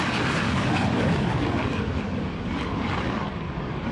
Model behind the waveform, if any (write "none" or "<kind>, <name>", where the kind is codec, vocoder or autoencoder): codec, DAC